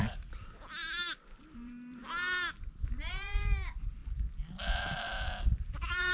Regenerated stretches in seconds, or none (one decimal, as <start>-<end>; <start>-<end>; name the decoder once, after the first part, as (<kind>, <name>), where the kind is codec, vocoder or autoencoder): 0.0-2.0 (vocoder, BigVGAN v2); 2.9-4.0; 4.8-6.1